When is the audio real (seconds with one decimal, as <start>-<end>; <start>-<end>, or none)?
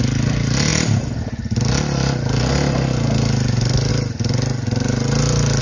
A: 0.0-5.6